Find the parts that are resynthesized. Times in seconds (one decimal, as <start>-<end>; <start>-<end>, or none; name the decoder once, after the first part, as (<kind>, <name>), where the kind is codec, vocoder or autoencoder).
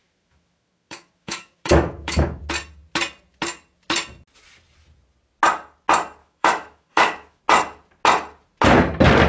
0.0-2.4 (autoencoder, DAC-VAE); 6.2-7.4